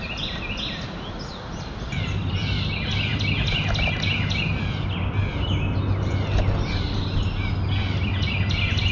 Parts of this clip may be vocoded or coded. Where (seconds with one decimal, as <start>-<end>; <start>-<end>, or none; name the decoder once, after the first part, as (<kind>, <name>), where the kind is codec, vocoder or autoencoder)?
none